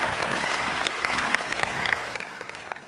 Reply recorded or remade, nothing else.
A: remade